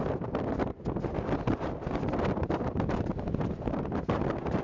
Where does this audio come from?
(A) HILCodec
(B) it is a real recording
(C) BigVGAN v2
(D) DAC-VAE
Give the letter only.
C